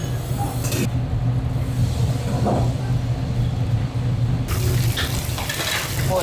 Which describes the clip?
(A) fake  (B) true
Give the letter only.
B